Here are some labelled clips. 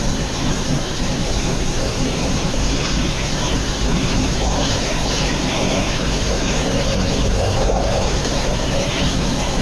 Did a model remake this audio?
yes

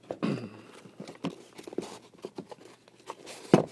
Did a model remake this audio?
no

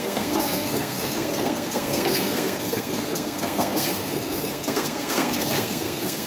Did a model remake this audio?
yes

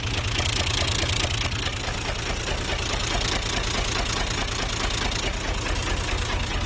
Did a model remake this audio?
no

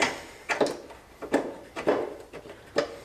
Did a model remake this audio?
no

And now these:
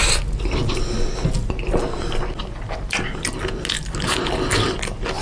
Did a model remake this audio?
no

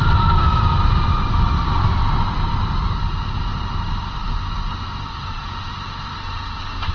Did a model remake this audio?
no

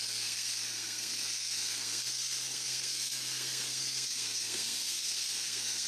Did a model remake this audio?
yes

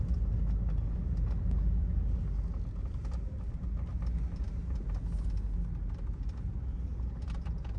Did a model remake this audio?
no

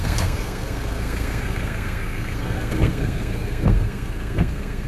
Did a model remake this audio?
yes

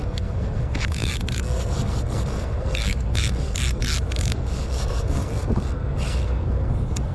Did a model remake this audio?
yes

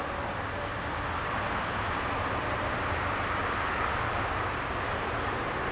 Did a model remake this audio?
no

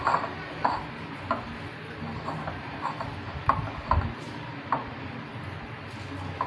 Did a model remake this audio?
no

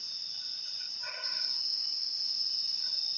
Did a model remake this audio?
no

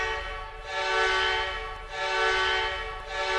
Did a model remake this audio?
no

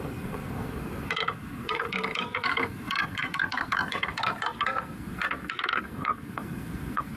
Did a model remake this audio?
yes